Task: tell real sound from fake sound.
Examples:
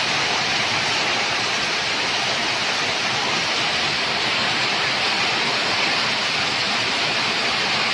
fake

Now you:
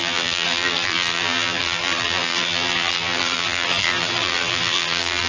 fake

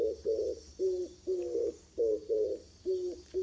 real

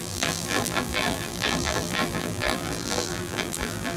fake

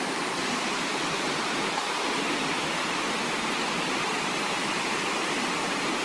fake